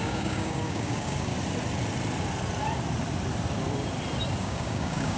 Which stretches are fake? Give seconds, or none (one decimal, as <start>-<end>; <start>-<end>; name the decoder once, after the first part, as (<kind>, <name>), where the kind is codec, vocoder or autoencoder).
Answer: 0.0-1.3 (codec, DAC); 4.4-5.2